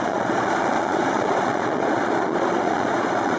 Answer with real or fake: fake